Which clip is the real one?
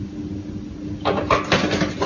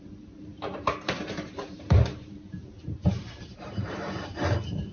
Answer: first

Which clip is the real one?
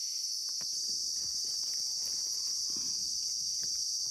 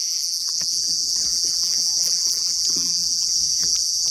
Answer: first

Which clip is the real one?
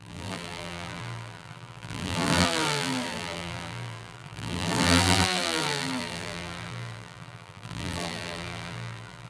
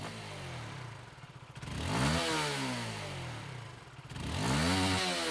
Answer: second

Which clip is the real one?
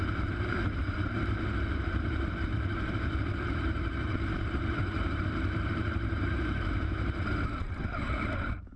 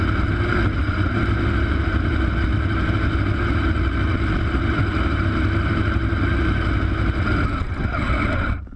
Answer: second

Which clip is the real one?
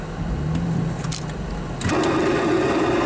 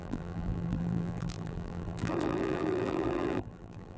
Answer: first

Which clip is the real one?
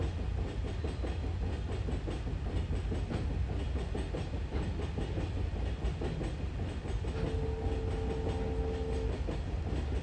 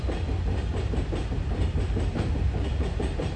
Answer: first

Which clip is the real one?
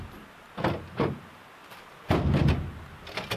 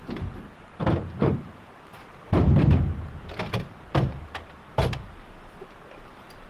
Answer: first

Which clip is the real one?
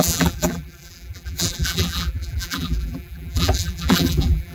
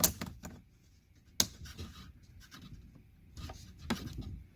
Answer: second